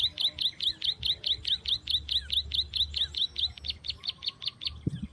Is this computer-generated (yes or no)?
no